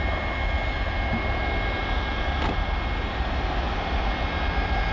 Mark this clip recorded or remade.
recorded